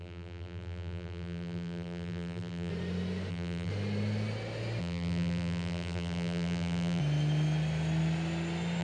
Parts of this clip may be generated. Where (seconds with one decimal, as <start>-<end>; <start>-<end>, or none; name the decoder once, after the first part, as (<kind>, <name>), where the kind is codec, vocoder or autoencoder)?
0.0-2.7 (vocoder, BigVGAN v2); 3.3-3.7; 4.8-7.0